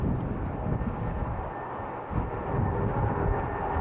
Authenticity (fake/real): fake